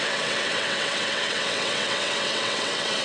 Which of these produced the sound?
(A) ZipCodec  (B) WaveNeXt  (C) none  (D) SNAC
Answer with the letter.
B